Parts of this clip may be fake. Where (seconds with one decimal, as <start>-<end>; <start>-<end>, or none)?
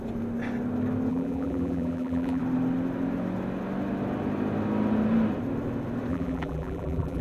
1.1-2.4; 6.1-7.2